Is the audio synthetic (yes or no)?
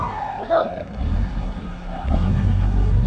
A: yes